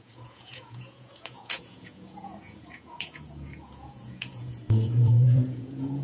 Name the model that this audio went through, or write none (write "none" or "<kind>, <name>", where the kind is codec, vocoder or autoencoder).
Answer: vocoder, Vocos